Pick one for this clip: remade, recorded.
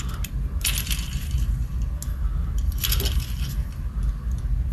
recorded